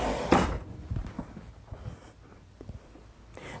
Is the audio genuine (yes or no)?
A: yes